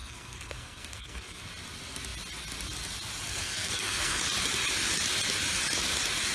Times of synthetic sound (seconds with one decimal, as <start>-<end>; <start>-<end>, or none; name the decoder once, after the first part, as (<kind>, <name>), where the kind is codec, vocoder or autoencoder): 0.0-1.5 (codec, SNAC); 3.3-4.2